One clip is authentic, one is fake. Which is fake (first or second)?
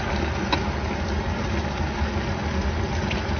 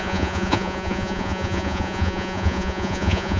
second